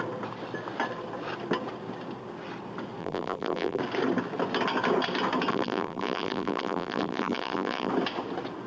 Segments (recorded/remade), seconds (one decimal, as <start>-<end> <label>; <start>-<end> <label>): 0.0-3.0 recorded; 3.0-3.8 remade; 3.8-5.5 recorded; 5.5-7.9 remade; 7.9-8.7 recorded